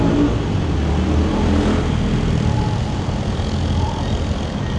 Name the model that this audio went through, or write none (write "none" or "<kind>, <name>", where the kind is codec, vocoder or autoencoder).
none